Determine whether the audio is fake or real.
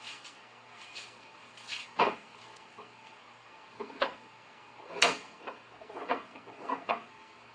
fake